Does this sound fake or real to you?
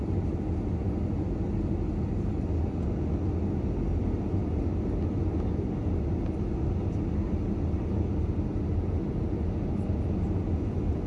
real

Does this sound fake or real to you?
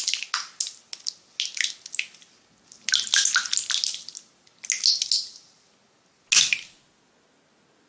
real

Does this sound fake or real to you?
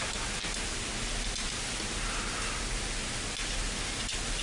real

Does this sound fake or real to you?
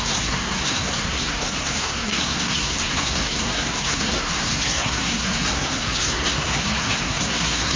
fake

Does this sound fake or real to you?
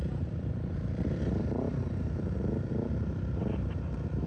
fake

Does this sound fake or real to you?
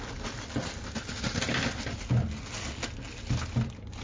real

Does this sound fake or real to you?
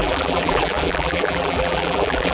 fake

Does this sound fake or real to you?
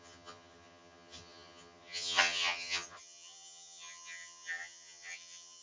fake